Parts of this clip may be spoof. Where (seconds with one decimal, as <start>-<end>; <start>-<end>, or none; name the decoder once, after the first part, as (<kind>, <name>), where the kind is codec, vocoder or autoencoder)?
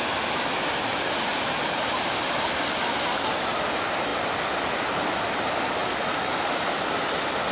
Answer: none